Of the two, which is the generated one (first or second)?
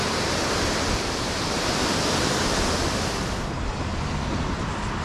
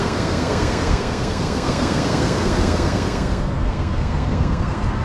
second